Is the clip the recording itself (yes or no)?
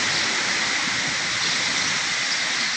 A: yes